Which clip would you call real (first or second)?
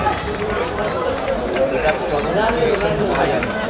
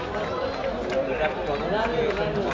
second